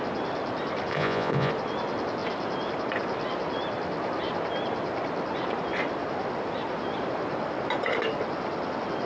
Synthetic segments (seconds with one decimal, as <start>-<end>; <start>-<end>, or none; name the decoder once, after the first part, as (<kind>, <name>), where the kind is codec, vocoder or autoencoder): 0.9-1.5 (vocoder, Vocos)